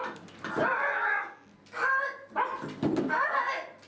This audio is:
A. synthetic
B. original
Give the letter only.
B